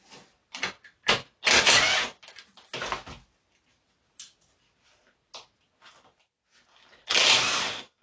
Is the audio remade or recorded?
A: recorded